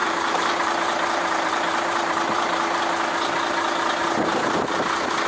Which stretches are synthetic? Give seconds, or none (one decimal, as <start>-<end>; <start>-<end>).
0.0-2.8